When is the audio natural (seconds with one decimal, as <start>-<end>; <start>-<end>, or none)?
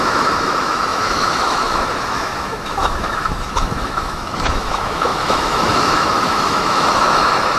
none